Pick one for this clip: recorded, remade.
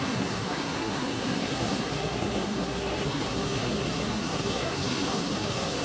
remade